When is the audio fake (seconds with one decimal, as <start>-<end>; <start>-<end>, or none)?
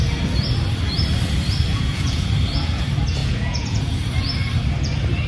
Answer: 1.7-2.3; 3.2-3.8